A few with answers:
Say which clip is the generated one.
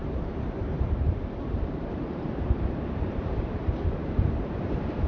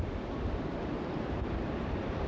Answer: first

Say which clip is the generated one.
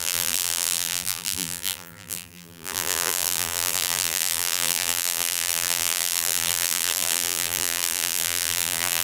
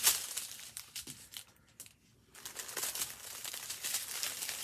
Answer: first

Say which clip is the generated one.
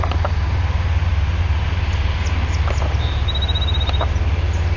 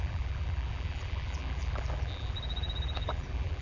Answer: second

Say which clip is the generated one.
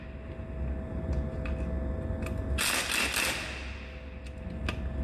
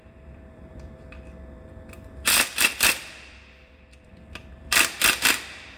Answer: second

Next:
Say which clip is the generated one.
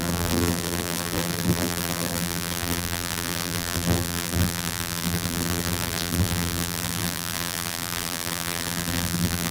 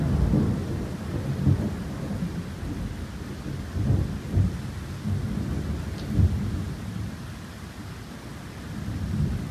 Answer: first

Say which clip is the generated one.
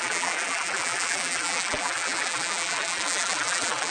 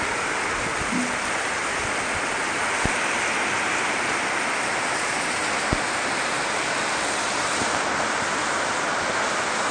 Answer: first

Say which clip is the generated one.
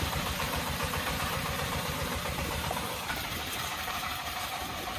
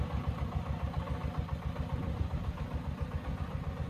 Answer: first